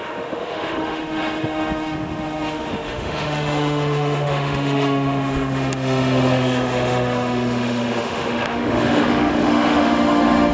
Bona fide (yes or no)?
no